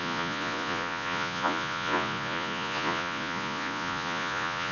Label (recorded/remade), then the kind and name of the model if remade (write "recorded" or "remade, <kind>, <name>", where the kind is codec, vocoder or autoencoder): remade, vocoder, Vocos